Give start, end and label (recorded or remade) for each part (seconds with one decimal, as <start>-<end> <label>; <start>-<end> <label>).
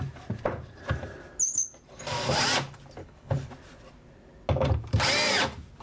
0.0-3.0 recorded; 3.0-3.5 remade; 3.5-5.8 recorded